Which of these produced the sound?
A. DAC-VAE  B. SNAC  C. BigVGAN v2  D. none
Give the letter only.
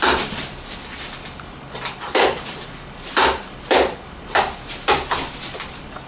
D